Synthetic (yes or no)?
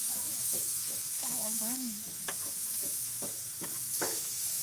yes